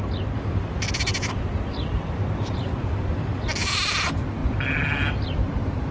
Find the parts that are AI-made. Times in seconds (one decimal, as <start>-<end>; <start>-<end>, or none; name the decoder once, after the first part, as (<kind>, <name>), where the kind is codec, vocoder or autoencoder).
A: 0.0-1.1 (vocoder, BigVGAN v2); 2.5-4.4; 5.1-5.9